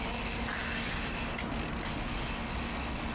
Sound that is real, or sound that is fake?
real